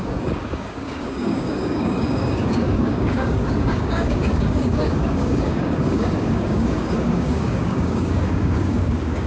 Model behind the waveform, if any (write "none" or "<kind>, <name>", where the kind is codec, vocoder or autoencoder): codec, DAC